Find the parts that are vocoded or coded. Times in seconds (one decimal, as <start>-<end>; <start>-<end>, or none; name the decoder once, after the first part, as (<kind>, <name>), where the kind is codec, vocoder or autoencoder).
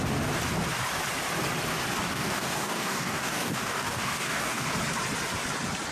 2.0-4.7 (codec, DAC)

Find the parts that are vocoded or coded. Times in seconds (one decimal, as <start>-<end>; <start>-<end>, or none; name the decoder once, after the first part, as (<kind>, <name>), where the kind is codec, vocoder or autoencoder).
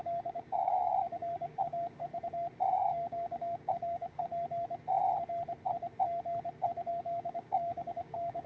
0.0-2.1 (codec, DAC); 2.7-4.3; 6.9-8.5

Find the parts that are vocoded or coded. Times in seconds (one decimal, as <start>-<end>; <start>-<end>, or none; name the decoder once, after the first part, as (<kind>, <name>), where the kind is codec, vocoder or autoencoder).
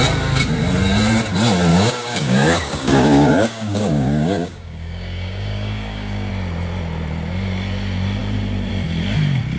1.7-6.3 (codec, DAC)